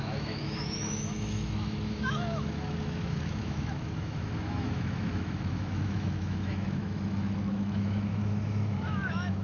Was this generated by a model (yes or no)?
yes